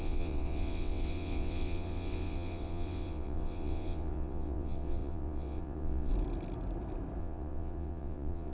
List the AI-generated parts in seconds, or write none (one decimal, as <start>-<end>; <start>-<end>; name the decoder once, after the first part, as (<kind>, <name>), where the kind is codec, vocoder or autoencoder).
0.0-6.1 (vocoder, WaveNeXt); 7.2-8.5